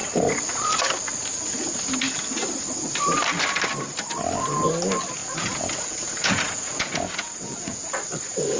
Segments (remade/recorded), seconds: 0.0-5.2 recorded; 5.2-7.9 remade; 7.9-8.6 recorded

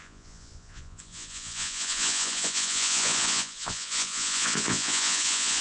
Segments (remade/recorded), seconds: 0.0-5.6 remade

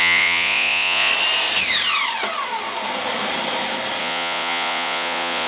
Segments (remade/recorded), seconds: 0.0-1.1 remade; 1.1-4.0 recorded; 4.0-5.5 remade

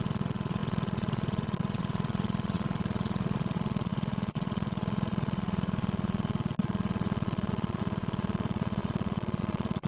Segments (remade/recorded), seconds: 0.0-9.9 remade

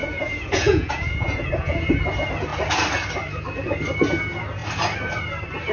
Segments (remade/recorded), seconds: 0.0-2.0 remade; 2.0-5.7 recorded